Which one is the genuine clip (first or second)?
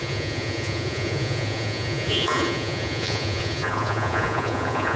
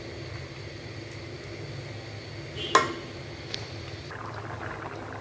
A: second